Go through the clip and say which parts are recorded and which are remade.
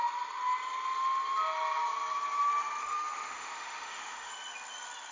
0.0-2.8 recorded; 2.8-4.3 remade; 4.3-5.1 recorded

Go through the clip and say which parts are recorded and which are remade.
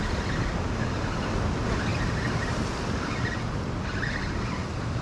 0.0-5.0 recorded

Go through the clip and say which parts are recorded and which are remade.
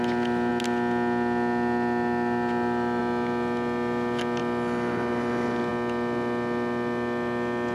0.0-7.7 recorded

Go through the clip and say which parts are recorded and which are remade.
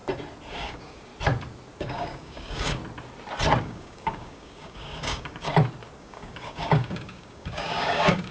0.0-0.5 recorded; 0.5-1.1 remade; 1.1-1.8 recorded; 1.8-2.8 remade; 2.8-3.6 recorded; 3.6-5.5 remade; 5.5-6.0 recorded; 6.0-8.3 remade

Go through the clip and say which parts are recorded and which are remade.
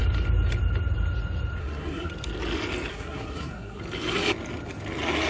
0.0-1.6 recorded; 1.6-2.1 remade; 2.1-2.9 recorded; 2.9-3.8 remade; 3.8-5.3 recorded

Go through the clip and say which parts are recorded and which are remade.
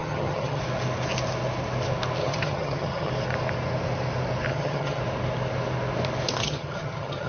0.0-0.6 remade; 0.6-2.2 recorded; 2.2-3.1 remade; 3.1-4.5 recorded; 4.5-5.0 remade; 5.0-6.4 recorded; 6.4-7.3 remade